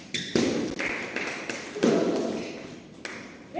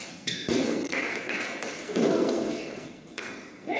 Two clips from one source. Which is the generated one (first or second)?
second